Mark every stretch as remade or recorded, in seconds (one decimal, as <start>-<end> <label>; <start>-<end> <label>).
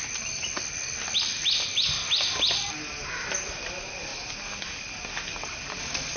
0.0-6.2 recorded